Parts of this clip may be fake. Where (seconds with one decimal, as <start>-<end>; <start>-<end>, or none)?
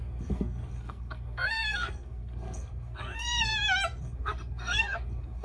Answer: 0.0-3.5; 4.0-5.4